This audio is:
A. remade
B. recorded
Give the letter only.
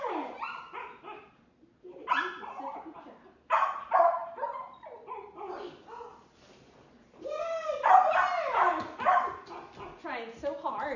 B